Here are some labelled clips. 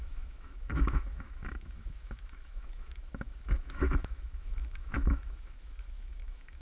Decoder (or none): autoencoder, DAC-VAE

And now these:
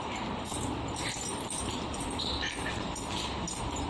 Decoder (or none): none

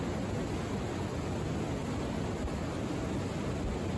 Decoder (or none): none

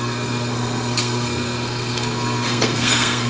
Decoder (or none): codec, SNAC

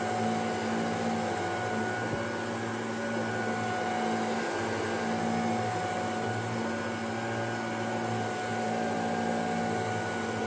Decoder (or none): none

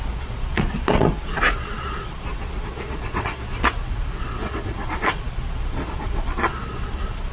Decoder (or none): vocoder, Vocos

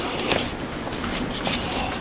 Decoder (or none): none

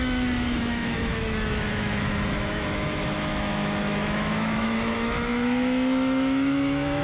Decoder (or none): autoencoder, DAC-VAE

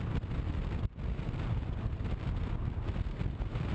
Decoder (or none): none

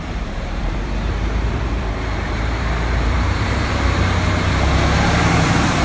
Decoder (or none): vocoder, BigVGAN v2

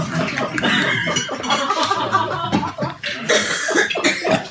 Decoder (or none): none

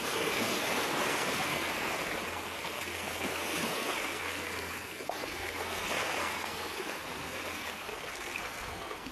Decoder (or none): codec, SNAC